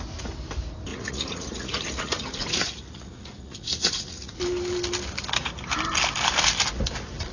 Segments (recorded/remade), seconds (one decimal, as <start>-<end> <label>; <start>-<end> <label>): 0.0-0.9 recorded; 0.9-4.4 remade; 4.4-7.3 recorded